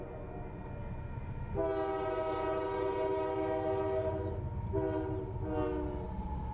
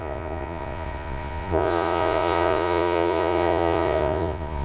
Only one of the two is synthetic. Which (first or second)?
second